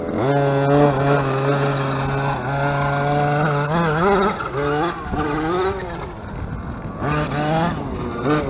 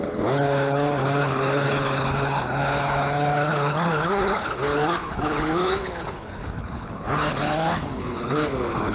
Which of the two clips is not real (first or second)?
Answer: second